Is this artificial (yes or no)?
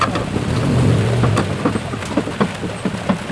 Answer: no